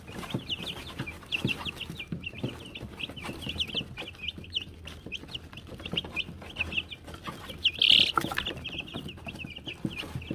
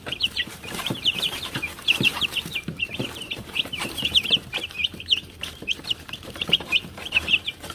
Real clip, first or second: first